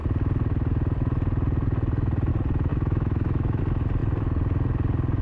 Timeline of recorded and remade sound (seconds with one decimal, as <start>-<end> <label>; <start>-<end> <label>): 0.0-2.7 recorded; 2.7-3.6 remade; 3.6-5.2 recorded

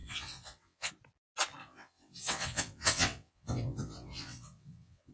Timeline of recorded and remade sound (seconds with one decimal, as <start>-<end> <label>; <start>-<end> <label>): 0.0-0.9 remade; 0.9-1.6 recorded; 1.6-5.1 remade

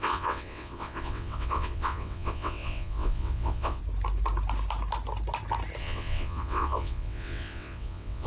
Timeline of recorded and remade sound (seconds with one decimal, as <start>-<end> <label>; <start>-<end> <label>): 0.0-3.8 remade; 3.8-5.8 recorded; 5.8-8.3 remade

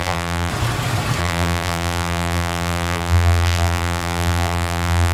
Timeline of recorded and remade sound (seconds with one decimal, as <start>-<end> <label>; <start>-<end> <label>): 0.0-0.5 remade; 0.5-1.2 recorded; 1.2-5.1 remade